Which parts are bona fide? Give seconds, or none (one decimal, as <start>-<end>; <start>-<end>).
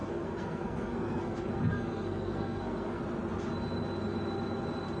3.0-5.0